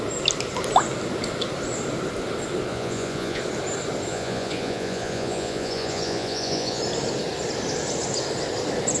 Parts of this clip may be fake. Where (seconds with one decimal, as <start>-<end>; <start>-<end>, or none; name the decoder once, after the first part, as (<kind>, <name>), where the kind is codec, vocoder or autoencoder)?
2.7-3.4 (vocoder, Vocos); 4.1-6.8